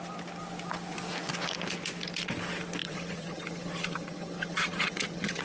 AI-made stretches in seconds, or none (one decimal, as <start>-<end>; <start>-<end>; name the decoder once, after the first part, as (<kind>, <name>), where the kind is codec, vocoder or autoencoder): 2.8-5.4 (vocoder, HiFi-GAN)